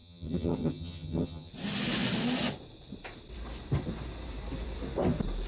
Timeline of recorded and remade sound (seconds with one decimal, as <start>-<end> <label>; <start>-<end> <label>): 0.0-1.5 remade; 1.5-5.5 recorded